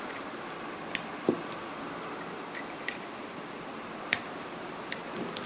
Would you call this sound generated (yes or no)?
no